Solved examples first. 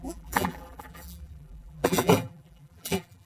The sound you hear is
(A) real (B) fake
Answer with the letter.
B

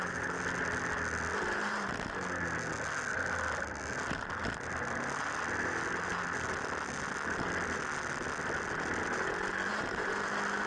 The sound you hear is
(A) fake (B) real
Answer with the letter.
B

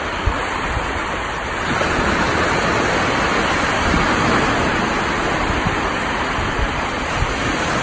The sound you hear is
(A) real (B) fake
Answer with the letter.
A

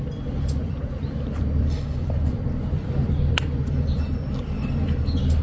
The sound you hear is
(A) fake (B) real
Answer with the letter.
A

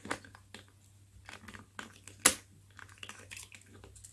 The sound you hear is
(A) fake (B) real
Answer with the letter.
B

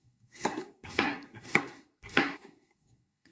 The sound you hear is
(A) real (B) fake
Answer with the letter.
B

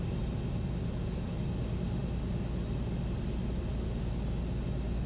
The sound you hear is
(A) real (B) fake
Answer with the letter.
A